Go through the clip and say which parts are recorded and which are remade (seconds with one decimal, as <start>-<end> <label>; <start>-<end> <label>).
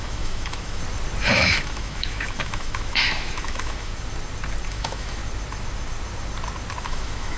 0.0-0.8 remade; 0.8-1.3 recorded; 1.3-3.9 remade; 3.9-4.7 recorded; 4.7-5.2 remade; 5.2-6.8 recorded; 6.8-7.4 remade